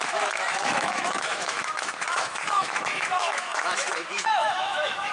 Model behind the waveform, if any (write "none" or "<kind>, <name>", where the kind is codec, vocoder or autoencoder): autoencoder, DAC-VAE